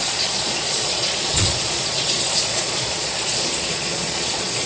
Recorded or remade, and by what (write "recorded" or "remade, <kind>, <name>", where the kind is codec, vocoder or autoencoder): remade, vocoder, Vocos